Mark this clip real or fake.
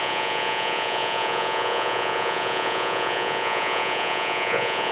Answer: fake